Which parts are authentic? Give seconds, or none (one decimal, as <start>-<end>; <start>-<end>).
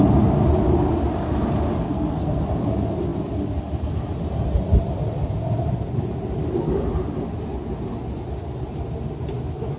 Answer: 0.0-1.8; 2.4-9.8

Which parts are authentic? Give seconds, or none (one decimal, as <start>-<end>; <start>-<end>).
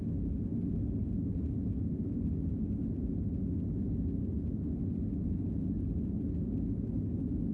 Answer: 0.0-7.5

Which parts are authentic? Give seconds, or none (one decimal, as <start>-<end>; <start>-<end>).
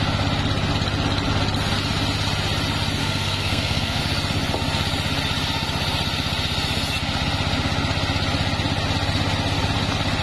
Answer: 0.0-3.0; 4.0-10.2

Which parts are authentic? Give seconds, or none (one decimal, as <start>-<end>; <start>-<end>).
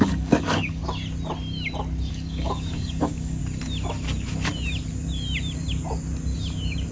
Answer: 0.8-2.1; 3.4-6.9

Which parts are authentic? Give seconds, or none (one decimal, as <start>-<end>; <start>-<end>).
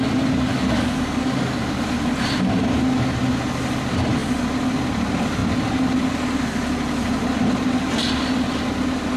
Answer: 0.0-0.5; 1.8-9.2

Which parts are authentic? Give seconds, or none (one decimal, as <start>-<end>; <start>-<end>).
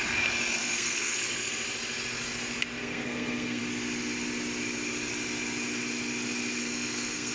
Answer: 0.0-0.6; 1.5-2.8; 3.6-6.6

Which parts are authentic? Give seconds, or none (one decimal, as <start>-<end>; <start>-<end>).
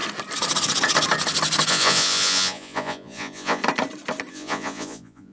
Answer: 0.0-1.7; 3.6-4.3